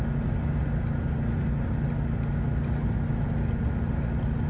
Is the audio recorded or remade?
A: recorded